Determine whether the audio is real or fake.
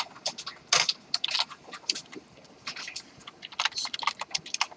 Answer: real